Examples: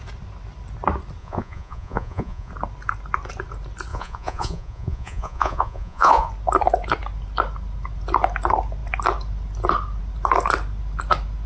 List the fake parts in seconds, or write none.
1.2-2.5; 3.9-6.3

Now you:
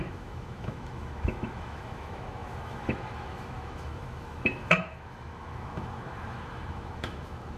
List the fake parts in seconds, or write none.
0.0-7.6

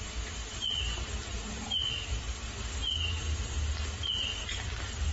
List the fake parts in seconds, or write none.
4.3-5.1

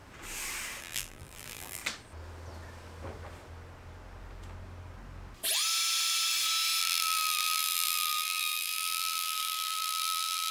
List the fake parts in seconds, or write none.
0.8-1.8; 6.8-10.5

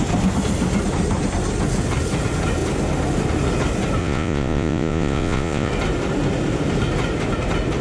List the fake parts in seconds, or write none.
4.0-5.7

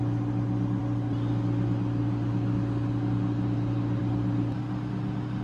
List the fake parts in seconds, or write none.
none

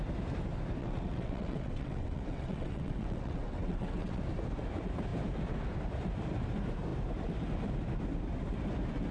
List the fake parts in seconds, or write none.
0.8-4.2